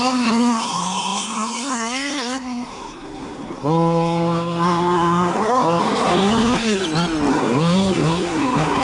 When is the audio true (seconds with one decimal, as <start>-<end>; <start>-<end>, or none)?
6.8-7.3